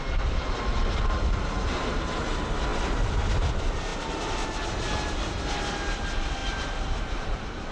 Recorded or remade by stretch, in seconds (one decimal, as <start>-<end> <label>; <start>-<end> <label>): 0.0-2.7 remade; 2.7-3.3 recorded; 3.3-3.9 remade; 3.9-5.7 recorded; 5.7-7.7 remade